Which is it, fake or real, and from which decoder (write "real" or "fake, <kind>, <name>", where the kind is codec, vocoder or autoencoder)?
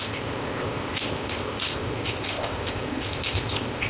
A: fake, codec, ZipCodec